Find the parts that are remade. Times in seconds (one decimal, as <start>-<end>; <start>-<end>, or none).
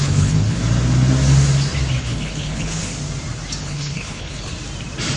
0.0-0.6; 2.0-2.9; 3.6-4.5